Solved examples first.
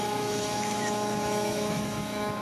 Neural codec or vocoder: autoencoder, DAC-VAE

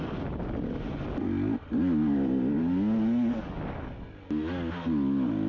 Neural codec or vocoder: none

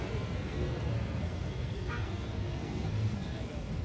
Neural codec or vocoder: codec, SNAC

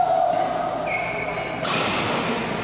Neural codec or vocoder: none